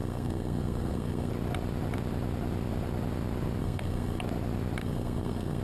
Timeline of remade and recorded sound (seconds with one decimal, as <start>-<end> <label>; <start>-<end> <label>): 0.0-1.3 remade; 1.3-3.6 recorded; 3.6-4.2 remade; 4.2-4.8 recorded; 4.8-5.6 remade